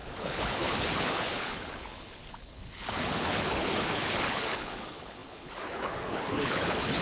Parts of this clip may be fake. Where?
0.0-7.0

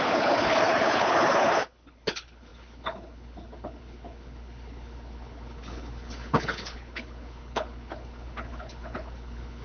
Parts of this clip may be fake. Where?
0.0-9.6

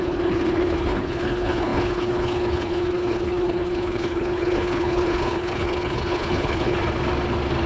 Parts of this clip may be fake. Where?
0.0-6.8

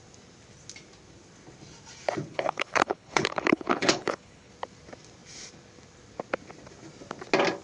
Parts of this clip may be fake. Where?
2.3-4.5

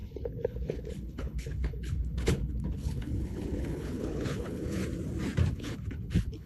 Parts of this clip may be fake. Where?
0.0-4.8; 5.5-6.5

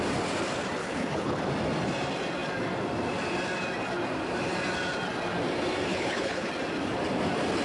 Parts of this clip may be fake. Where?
0.8-1.4; 5.9-6.5

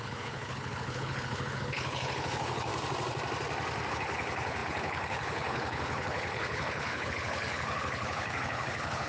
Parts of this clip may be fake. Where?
0.0-2.7; 3.9-9.1